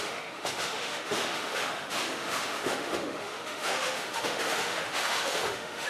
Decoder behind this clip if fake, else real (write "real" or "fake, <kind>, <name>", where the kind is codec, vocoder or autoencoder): fake, autoencoder, DAC-VAE